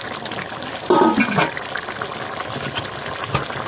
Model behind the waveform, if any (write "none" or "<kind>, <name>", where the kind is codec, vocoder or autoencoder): none